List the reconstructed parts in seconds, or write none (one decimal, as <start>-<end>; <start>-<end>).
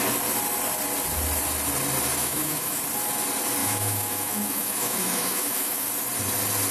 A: 2.2-2.8; 3.6-5.9